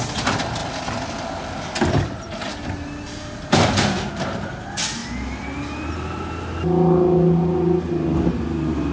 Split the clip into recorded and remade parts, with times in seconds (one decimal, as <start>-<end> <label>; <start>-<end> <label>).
0.0-0.6 recorded; 0.6-4.1 remade; 4.1-8.9 recorded